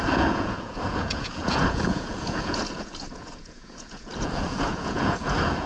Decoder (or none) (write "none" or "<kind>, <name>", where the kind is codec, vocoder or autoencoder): vocoder, Vocos